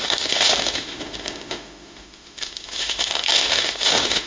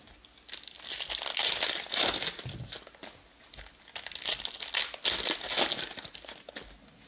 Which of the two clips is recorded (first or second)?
second